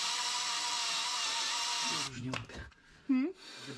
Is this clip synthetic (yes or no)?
no